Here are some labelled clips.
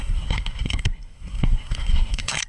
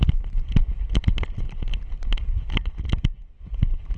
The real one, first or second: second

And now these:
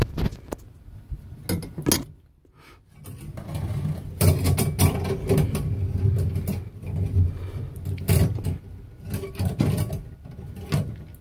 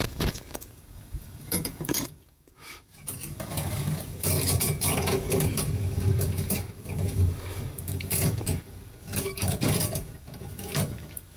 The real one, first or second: first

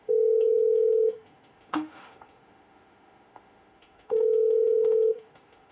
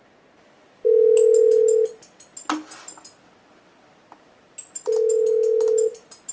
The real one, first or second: second